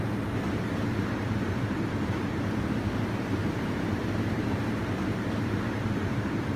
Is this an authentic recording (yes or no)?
no